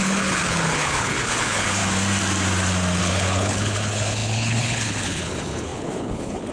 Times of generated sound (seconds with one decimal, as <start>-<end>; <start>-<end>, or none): 0.0-1.8; 3.0-6.5